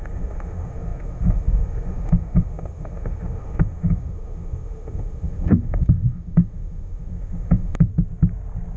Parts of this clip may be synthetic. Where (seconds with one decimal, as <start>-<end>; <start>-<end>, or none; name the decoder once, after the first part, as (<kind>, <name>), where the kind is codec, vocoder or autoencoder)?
0.0-7.9 (autoencoder, DAC-VAE)